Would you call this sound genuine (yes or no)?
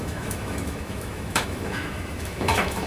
no